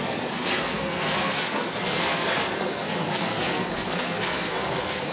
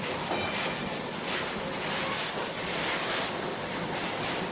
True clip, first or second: second